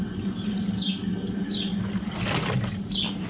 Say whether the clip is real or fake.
real